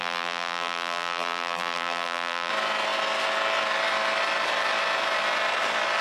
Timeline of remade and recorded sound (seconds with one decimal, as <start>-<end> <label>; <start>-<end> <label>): 0.0-2.5 remade; 2.5-6.0 recorded